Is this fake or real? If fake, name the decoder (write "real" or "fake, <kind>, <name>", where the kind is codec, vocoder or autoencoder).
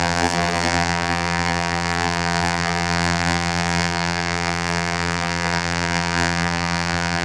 fake, vocoder, BigVGAN v2